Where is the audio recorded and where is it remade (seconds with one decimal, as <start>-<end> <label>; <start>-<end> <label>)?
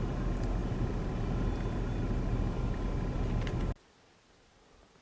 0.0-5.0 recorded